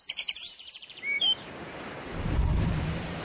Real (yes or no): no